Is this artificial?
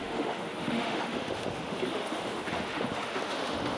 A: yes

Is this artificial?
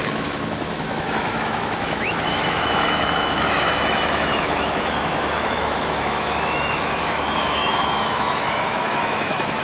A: yes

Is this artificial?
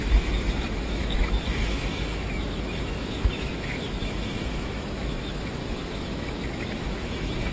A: yes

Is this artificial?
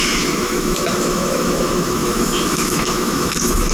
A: yes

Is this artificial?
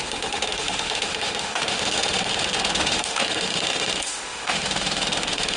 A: yes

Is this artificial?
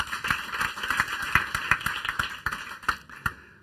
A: no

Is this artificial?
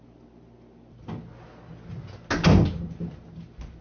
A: no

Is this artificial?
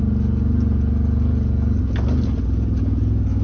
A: no